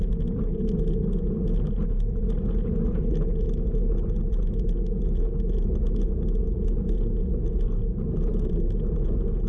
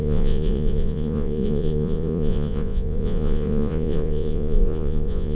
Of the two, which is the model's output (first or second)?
second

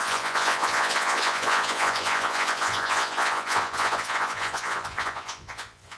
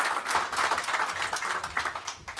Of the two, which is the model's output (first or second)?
first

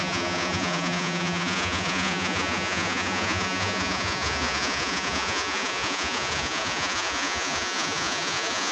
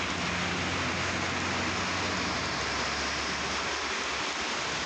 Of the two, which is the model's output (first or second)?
first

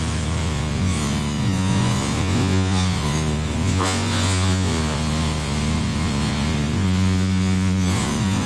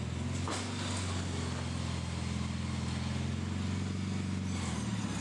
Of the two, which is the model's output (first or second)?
first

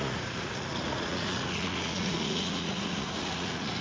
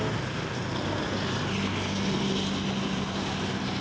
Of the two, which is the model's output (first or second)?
first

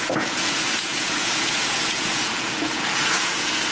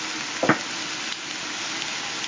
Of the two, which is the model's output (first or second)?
first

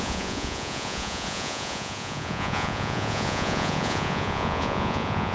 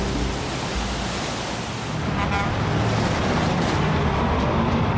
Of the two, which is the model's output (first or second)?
first